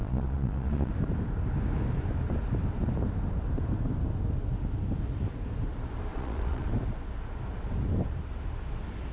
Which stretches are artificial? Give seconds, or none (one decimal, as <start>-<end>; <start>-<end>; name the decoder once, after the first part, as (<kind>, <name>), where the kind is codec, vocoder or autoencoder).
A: 0.0-0.9 (vocoder, Vocos); 6.1-6.7